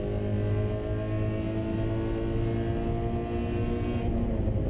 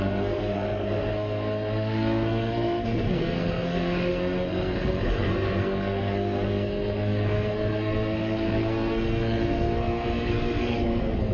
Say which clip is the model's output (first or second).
second